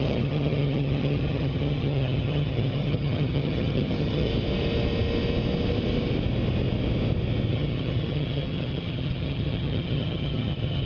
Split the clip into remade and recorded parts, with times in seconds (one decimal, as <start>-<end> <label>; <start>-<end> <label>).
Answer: 0.0-4.3 remade; 4.3-7.5 recorded; 7.5-10.9 remade

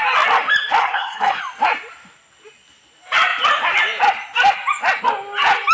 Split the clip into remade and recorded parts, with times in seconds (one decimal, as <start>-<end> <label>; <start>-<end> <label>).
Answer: 0.0-0.8 recorded; 0.8-1.4 remade; 1.4-5.7 recorded

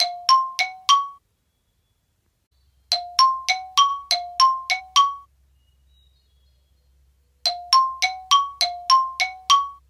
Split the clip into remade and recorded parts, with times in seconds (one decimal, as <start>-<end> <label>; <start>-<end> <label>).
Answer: 0.0-9.9 recorded

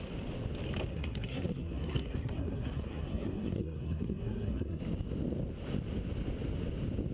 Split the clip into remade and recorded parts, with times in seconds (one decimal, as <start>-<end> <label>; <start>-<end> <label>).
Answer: 0.0-0.9 recorded; 0.9-4.8 remade; 4.8-7.1 recorded

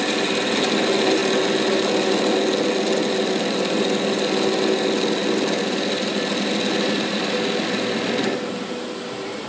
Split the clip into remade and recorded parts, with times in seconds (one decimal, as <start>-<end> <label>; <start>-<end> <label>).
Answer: 0.0-9.5 recorded

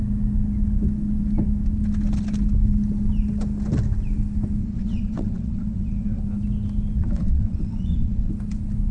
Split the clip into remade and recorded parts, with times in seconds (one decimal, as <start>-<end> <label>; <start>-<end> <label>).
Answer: 0.0-4.6 recorded; 4.6-6.2 remade; 6.2-7.0 recorded; 7.0-8.3 remade; 8.3-8.9 recorded

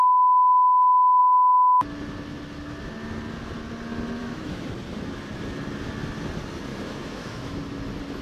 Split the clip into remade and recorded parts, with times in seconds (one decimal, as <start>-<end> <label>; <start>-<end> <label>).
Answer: 0.0-4.2 recorded; 4.2-4.7 remade; 4.7-6.7 recorded; 6.7-7.6 remade; 7.6-8.2 recorded

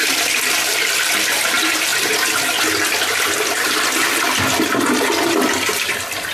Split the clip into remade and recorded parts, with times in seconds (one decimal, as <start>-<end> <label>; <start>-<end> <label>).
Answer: 0.0-1.9 remade; 1.9-4.8 recorded; 4.8-6.3 remade